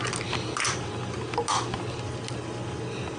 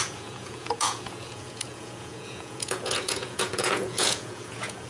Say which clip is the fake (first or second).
second